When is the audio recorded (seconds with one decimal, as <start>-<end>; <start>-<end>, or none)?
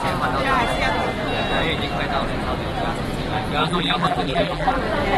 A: 0.0-3.6; 4.8-5.2